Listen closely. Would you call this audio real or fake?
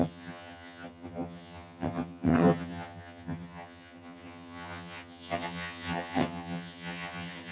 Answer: fake